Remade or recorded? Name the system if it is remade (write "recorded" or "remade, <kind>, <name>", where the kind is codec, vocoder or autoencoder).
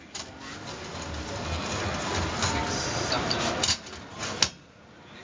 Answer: recorded